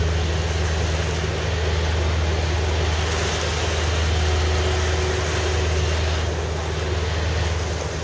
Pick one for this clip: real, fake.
real